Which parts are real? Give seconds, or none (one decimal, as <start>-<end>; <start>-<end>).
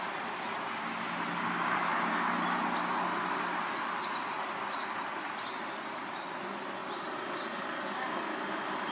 0.0-8.9